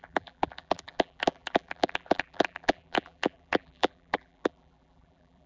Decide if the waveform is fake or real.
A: fake